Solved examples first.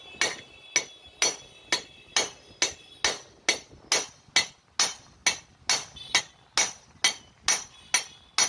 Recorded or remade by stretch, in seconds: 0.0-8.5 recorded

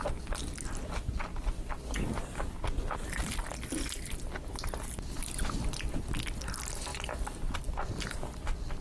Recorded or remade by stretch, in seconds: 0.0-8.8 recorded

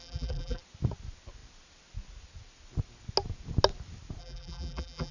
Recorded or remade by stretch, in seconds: 0.0-0.6 remade; 0.6-4.2 recorded; 4.2-5.1 remade

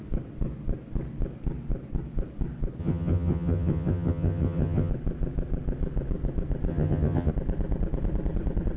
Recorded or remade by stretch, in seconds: 0.0-2.8 recorded; 2.8-4.9 remade; 4.9-6.7 recorded; 6.7-7.3 remade; 7.3-8.8 recorded